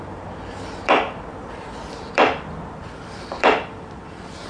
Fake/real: fake